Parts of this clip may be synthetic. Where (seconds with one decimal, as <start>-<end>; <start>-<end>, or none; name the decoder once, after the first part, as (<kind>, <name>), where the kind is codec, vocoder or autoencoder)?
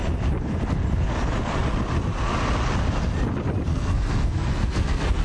3.7-5.2 (codec, SNAC)